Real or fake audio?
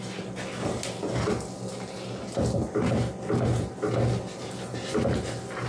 real